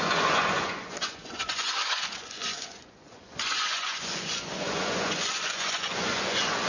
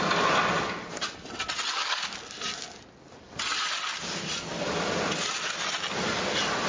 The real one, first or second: second